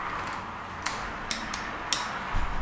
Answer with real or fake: real